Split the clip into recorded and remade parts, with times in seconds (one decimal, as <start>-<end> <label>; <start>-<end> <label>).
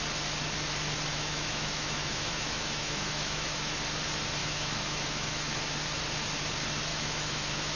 0.0-1.1 recorded; 1.1-3.7 remade; 3.7-4.4 recorded; 4.4-5.6 remade; 5.6-6.9 recorded; 6.9-7.8 remade